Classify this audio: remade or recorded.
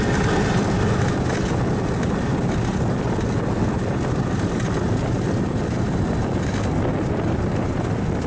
recorded